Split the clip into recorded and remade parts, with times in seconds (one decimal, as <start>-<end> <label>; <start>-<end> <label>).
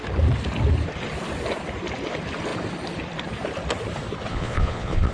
0.0-4.3 recorded; 4.3-5.1 remade